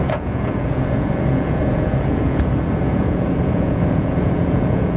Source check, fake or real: fake